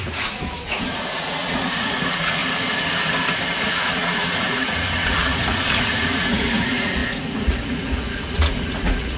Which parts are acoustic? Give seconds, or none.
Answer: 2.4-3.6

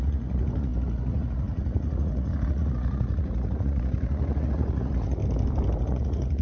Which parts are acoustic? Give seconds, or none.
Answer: 5.2-5.8

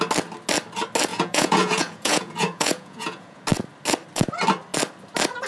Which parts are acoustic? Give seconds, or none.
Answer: 0.0-1.1; 3.4-5.5

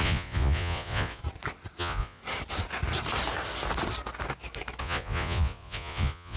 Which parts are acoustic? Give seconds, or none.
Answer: 1.2-1.8; 2.2-4.8